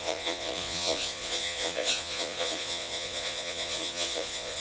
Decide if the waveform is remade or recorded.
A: remade